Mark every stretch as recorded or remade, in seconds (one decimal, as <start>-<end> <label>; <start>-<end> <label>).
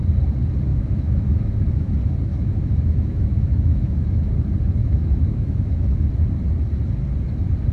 0.0-0.7 recorded; 0.7-1.9 remade; 1.9-2.3 recorded; 2.3-4.3 remade; 4.3-4.8 recorded; 4.8-6.1 remade; 6.1-7.7 recorded